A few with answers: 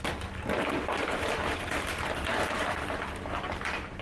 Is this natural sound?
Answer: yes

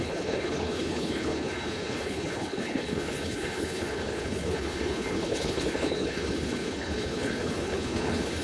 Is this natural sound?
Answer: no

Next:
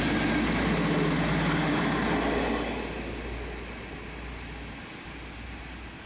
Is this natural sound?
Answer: yes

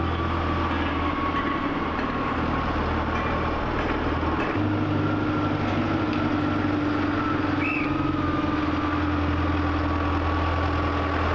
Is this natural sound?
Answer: yes